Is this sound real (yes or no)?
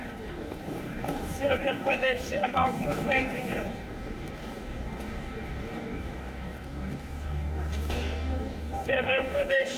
no